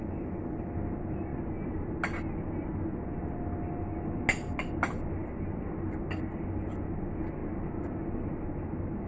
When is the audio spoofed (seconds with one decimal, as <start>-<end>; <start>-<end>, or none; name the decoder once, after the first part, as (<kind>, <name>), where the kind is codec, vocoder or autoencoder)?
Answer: none